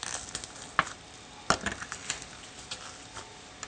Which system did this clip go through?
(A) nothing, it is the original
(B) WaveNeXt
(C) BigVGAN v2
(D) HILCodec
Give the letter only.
A